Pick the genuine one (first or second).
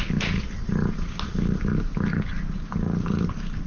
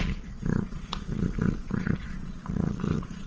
first